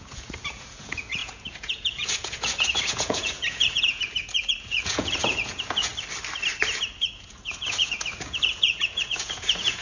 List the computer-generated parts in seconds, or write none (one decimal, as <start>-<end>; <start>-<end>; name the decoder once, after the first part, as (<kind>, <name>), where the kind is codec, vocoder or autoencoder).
0.0-5.9 (vocoder, Vocos); 7.0-9.8